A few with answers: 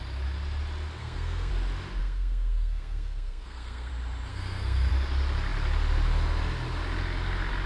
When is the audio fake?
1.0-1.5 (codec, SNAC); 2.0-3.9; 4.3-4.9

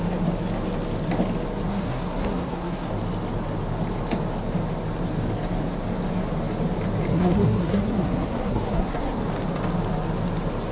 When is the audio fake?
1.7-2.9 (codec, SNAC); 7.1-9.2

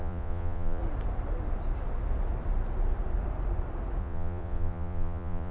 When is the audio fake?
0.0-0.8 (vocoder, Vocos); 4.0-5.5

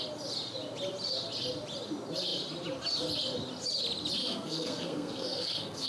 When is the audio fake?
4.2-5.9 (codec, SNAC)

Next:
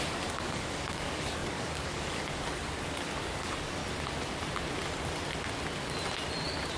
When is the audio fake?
0.0-3.8 (codec, DAC)

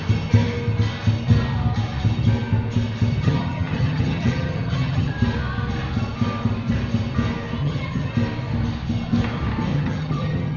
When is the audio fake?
3.2-5.1 (vocoder, HiFi-GAN); 7.6-8.1; 9.7-10.6